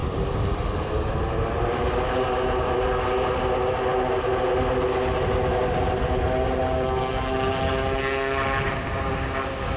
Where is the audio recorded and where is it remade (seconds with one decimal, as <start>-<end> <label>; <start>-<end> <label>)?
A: 0.0-9.8 recorded